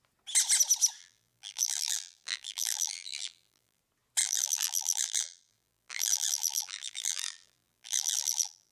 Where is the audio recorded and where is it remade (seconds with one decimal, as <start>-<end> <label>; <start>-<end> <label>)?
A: 0.0-1.0 recorded; 1.0-3.8 remade; 3.8-4.2 recorded; 4.2-8.7 remade